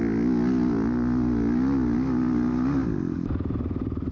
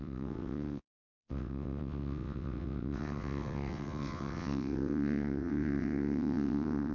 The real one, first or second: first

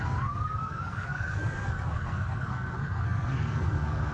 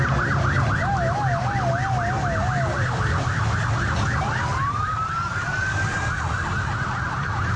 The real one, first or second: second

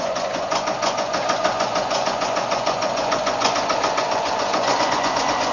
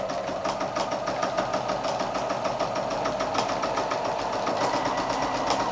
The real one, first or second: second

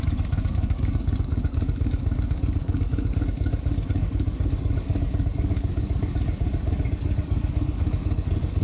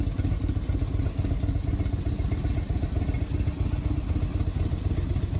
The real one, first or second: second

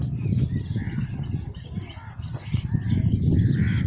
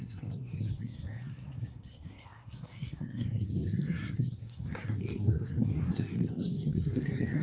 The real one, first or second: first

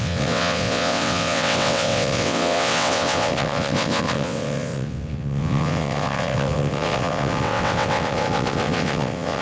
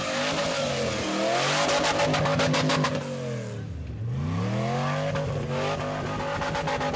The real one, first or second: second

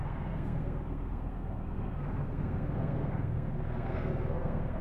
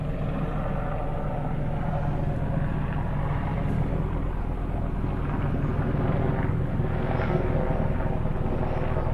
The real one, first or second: second